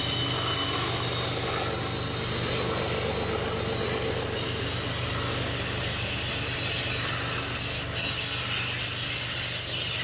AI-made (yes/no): no